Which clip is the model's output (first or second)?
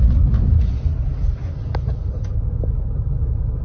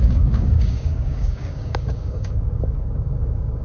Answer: second